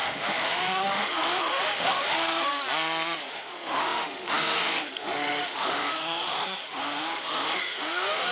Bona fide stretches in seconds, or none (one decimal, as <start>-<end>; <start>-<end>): 2.5-3.3